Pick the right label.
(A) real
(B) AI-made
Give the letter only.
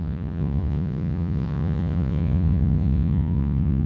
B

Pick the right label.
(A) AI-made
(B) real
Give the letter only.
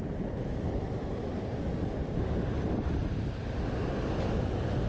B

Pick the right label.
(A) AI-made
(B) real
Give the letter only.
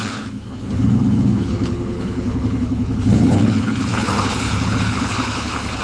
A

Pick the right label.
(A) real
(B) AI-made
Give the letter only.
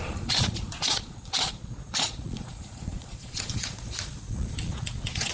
B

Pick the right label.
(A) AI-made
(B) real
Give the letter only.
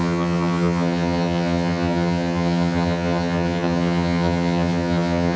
A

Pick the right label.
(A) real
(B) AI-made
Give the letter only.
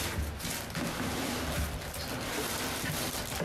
A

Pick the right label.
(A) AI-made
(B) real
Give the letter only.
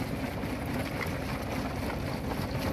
B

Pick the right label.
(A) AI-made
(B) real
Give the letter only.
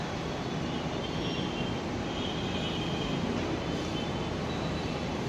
B